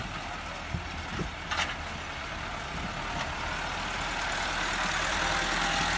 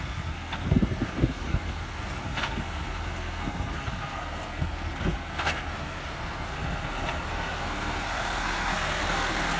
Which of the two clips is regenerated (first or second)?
second